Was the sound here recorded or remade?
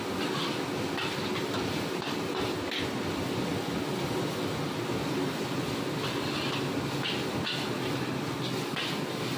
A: recorded